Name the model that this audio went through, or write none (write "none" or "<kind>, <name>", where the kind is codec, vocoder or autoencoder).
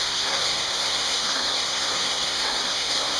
codec, SNAC